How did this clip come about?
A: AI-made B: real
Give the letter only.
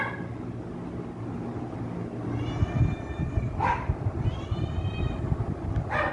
B